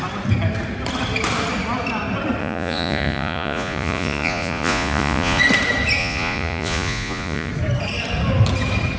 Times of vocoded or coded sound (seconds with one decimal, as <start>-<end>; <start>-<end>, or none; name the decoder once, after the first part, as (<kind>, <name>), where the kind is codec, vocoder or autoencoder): 2.4-5.4 (vocoder, Vocos); 6.0-7.5